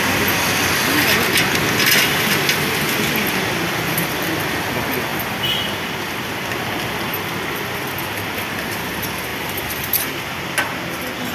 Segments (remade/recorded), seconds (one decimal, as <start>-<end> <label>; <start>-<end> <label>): 0.0-11.3 recorded